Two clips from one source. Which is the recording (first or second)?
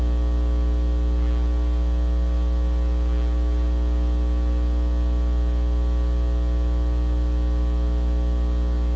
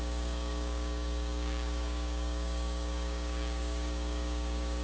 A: first